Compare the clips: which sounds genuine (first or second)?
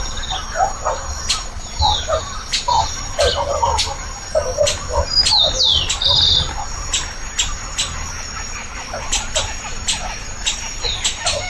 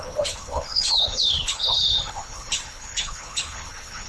first